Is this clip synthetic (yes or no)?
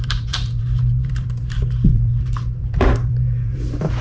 yes